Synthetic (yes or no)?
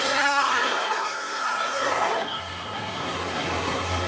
yes